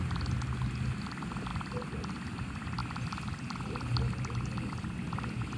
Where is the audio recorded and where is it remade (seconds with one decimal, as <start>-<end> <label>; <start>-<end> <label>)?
0.0-5.6 recorded